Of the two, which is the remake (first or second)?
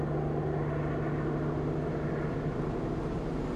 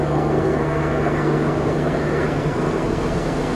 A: second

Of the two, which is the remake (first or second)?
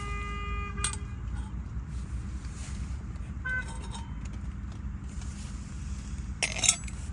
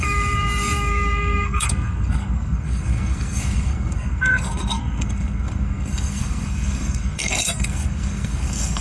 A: second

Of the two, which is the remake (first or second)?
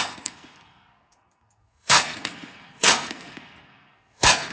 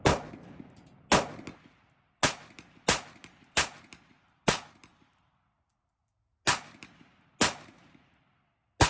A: first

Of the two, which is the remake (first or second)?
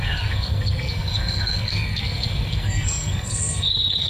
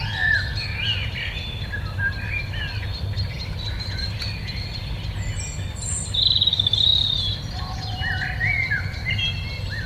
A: first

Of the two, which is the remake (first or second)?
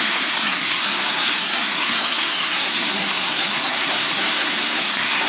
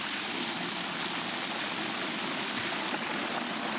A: first